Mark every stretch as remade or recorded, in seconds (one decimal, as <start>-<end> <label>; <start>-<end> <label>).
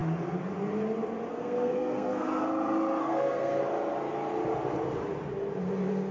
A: 0.0-1.3 recorded; 1.3-2.4 remade; 2.4-3.0 recorded; 3.0-3.6 remade; 3.6-6.1 recorded